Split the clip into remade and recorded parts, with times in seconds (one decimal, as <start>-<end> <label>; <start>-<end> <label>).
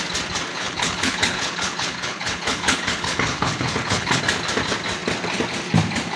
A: 0.0-0.5 recorded; 0.5-4.2 remade; 4.2-6.2 recorded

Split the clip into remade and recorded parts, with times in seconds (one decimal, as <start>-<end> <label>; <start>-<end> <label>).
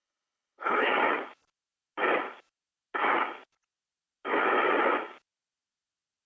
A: 0.0-0.9 remade; 0.9-6.3 recorded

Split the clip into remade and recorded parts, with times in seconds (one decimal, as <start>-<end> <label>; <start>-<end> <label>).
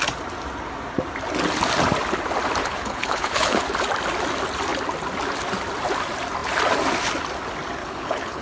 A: 0.0-2.6 recorded; 2.6-3.6 remade; 3.6-7.8 recorded; 7.8-8.4 remade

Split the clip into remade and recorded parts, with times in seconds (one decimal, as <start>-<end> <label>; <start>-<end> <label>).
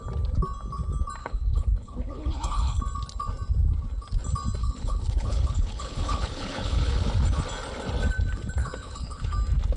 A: 0.0-1.2 recorded; 1.2-2.8 remade; 2.8-4.6 recorded; 4.6-7.0 remade; 7.0-8.6 recorded; 8.6-9.3 remade; 9.3-9.8 recorded